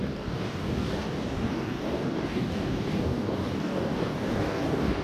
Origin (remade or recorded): remade